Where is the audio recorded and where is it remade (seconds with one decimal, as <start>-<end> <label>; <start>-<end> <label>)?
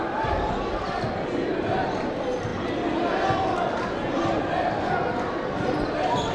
0.0-6.3 recorded